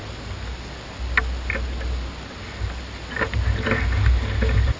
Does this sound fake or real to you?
real